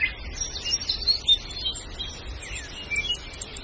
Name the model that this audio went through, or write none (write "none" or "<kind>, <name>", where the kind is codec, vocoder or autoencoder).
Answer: none